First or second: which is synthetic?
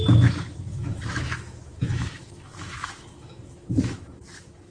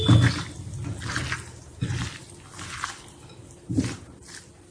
first